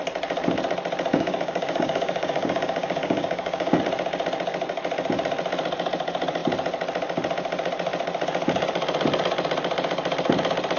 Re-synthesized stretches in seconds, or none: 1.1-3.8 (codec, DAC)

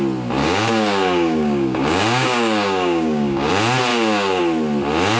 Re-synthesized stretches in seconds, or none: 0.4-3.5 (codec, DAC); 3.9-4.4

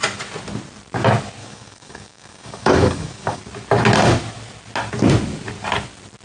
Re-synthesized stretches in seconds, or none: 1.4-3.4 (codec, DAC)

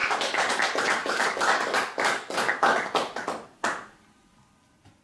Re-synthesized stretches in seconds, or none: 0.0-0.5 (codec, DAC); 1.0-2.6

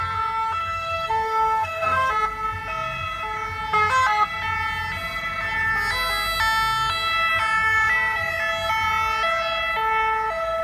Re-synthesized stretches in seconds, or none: 0.6-2.1 (codec, DAC)

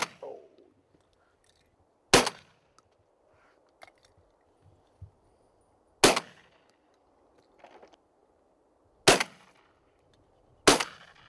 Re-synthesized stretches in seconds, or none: none

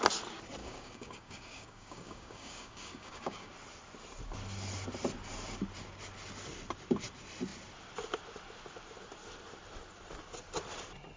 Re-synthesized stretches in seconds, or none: 0.6-3.5 (codec, DAC)

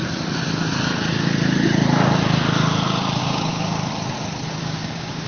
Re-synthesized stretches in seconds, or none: 3.2-3.8 (codec, DAC); 4.6-5.3